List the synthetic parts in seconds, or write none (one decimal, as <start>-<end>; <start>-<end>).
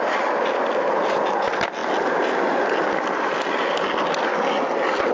none